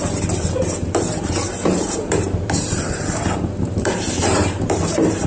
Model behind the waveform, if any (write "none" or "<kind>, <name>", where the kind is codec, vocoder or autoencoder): vocoder, BigVGAN v2